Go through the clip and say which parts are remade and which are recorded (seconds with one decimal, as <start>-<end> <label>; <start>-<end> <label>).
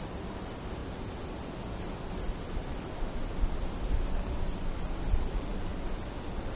0.0-0.8 remade; 0.8-4.8 recorded; 4.8-5.7 remade; 5.7-6.6 recorded